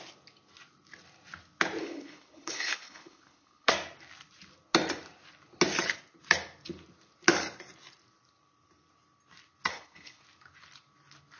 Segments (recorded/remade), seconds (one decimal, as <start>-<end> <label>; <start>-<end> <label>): 0.0-1.8 recorded; 1.8-3.7 remade; 3.7-9.7 recorded; 9.7-10.2 remade; 10.2-11.4 recorded